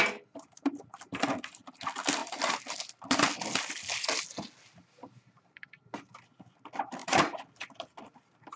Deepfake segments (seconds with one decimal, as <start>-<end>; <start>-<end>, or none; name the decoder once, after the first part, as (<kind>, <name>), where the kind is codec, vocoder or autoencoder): none